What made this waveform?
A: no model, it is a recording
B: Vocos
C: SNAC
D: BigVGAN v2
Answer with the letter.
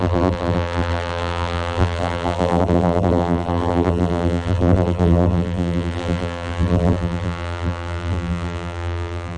D